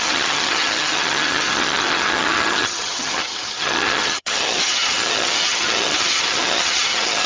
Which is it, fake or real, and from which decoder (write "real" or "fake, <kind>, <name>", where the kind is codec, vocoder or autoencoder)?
fake, vocoder, HiFi-GAN